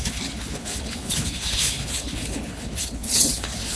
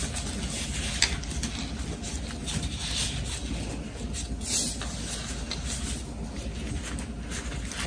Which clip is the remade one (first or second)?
first